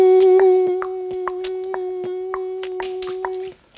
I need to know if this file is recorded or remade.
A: recorded